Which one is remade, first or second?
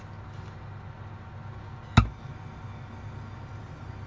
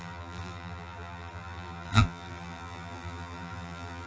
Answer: second